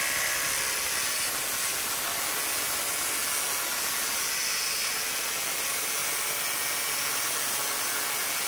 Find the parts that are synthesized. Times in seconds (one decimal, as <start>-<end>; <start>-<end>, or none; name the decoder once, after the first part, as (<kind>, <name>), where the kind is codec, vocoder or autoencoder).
none